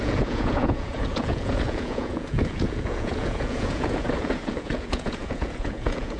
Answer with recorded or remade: remade